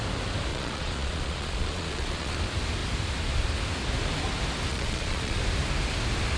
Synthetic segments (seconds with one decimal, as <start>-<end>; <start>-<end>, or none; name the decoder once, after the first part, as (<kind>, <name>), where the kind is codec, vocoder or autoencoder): 0.5-2.4 (vocoder, Vocos); 4.7-5.4

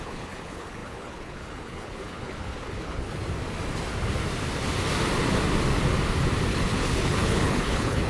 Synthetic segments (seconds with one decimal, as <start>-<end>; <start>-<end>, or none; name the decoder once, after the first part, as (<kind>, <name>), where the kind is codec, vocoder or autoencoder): 0.0-3.2 (codec, HILCodec); 6.5-8.1

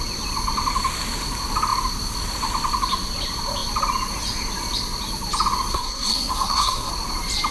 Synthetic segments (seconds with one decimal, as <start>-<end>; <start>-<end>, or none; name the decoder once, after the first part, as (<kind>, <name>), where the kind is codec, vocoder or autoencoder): 5.7-6.9 (codec, SNAC)

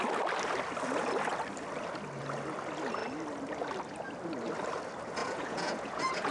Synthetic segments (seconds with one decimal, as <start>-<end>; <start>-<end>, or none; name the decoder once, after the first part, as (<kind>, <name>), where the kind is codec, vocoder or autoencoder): 5.2-6.3 (vocoder, Vocos)

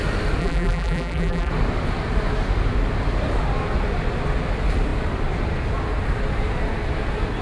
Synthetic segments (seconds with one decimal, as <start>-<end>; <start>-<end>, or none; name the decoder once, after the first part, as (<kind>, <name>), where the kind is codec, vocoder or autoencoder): 0.4-1.5 (vocoder, BigVGAN v2)

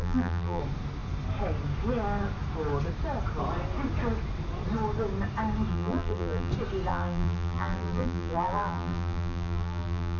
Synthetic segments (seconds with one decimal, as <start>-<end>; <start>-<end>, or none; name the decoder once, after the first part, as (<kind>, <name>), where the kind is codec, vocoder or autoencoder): 0.0-0.6 (vocoder, BigVGAN v2); 5.7-6.5; 6.9-10.2